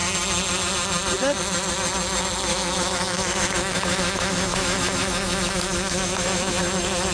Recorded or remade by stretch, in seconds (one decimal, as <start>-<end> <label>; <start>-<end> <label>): 0.0-2.5 recorded; 2.5-6.6 remade; 6.6-7.1 recorded